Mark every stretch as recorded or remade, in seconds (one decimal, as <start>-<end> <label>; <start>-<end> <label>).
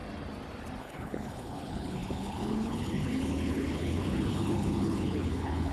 0.0-0.8 recorded; 0.8-5.7 remade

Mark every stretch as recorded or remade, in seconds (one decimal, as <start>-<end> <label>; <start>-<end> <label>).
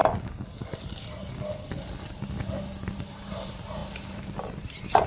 0.0-3.1 recorded; 3.1-3.8 remade; 3.8-4.4 recorded; 4.4-5.1 remade